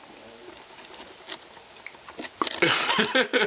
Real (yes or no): yes